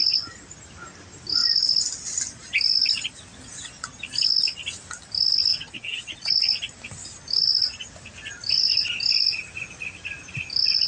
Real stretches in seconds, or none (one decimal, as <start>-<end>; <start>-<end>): 0.0-5.5; 6.3-10.9